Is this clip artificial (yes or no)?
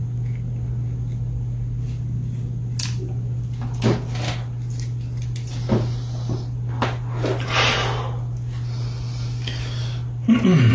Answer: no